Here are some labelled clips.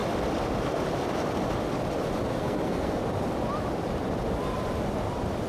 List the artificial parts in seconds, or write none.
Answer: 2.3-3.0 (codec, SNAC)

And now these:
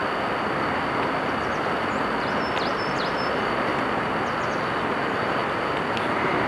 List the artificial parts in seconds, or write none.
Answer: 2.7-3.7 (vocoder, BigVGAN v2); 4.5-5.4; 6.0-6.5

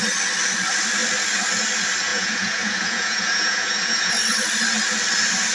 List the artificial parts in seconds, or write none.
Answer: 2.1-4.1 (vocoder, Vocos)

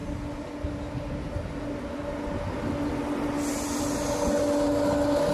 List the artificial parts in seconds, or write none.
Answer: none

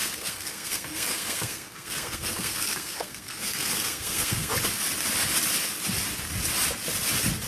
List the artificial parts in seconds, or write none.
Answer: 0.0-4.5 (codec, SNAC)

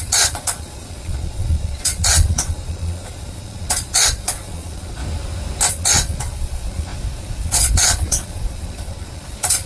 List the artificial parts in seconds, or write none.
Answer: 0.0-5.0 (vocoder, Vocos); 5.7-9.7

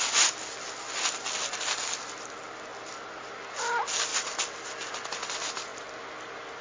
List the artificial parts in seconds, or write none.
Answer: 4.1-4.7 (vocoder, BigVGAN v2)

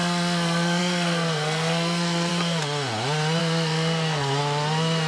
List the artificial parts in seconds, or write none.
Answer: 0.0-2.3 (codec, SNAC); 3.4-4.4